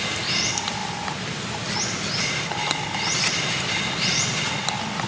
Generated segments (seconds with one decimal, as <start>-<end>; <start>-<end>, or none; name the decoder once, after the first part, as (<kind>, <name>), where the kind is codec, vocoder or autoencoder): none